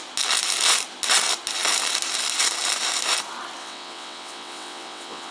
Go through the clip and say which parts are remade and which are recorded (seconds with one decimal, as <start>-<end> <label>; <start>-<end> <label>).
0.0-3.6 recorded; 3.6-5.3 remade